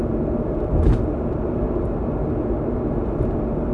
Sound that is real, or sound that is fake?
real